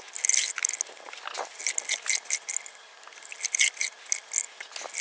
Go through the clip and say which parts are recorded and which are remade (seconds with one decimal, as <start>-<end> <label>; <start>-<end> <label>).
0.0-5.0 recorded